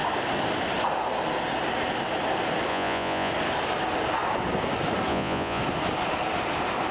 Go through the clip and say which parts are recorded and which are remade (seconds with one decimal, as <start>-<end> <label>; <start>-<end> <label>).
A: 0.0-2.7 recorded; 2.7-3.3 remade; 3.3-5.1 recorded; 5.1-5.6 remade; 5.6-6.9 recorded